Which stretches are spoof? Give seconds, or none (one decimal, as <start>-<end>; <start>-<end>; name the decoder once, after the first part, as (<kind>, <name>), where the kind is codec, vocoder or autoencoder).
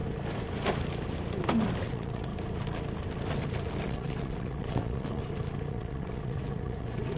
1.8-2.3 (vocoder, WaveNeXt); 3.8-5.2; 5.7-7.2